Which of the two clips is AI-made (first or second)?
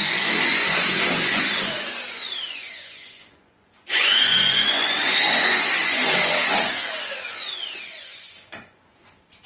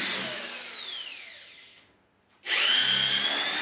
first